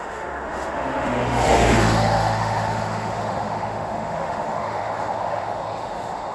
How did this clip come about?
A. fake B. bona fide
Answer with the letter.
A